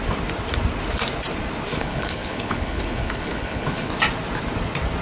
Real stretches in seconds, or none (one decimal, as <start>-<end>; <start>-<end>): 0.0-1.7; 3.9-5.0